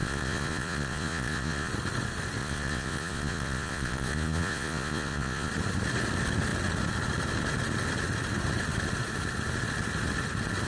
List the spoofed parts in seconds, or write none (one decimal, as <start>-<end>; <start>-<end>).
0.0-1.7; 2.4-5.5